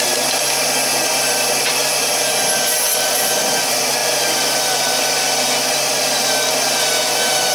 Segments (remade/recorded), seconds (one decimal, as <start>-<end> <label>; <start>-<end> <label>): 0.0-7.5 recorded